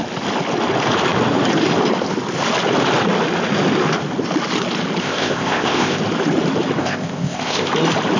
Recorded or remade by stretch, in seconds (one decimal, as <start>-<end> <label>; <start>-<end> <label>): 0.0-5.0 recorded; 5.0-6.0 remade; 6.0-6.8 recorded; 6.8-7.7 remade; 7.7-8.2 recorded